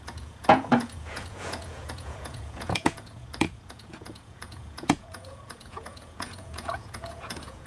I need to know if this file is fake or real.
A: fake